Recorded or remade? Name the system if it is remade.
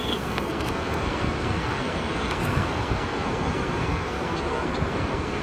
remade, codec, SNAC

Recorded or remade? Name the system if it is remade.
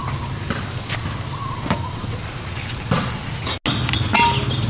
recorded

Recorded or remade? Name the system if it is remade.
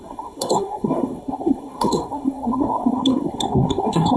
remade, codec, SNAC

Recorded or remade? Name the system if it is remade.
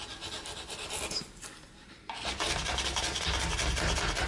recorded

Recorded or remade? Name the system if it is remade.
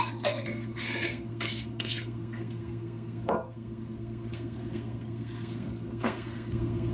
remade, codec, SNAC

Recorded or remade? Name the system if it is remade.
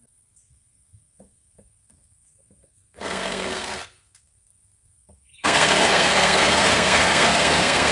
remade, codec, SNAC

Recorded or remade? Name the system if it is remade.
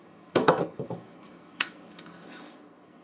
remade, codec, SNAC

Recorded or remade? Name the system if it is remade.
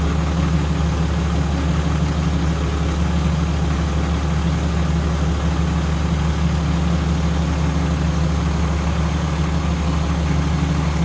recorded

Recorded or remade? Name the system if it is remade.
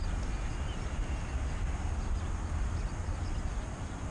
recorded